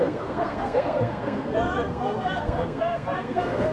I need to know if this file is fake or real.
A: fake